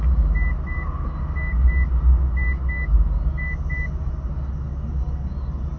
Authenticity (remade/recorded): recorded